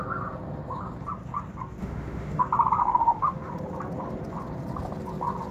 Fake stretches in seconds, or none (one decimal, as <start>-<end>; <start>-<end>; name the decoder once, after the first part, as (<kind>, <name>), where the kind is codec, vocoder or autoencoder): 1.8-2.4 (autoencoder, DAC-VAE); 2.8-3.5